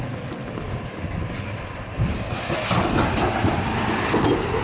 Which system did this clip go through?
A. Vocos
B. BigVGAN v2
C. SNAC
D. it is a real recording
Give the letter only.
D